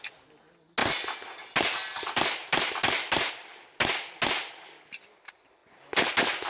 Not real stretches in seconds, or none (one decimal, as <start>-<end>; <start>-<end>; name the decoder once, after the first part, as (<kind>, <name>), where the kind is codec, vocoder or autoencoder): none